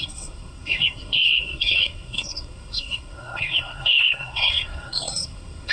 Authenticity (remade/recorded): remade